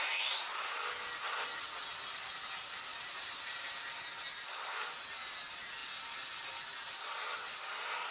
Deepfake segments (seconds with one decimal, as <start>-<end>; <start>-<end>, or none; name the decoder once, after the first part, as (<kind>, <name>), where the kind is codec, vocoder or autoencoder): 2.9-4.0 (vocoder, BigVGAN v2)